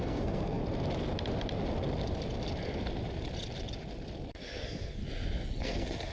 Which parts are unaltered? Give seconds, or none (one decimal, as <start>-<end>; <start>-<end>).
0.6-4.3; 5.0-5.6